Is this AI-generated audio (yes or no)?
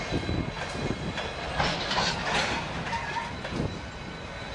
no